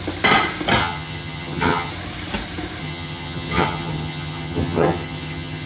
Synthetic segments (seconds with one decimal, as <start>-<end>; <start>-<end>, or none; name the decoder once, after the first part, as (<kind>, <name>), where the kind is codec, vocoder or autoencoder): 0.8-1.9 (vocoder, HiFi-GAN); 2.8-5.7